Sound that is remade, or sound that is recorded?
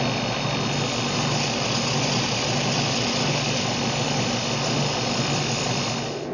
recorded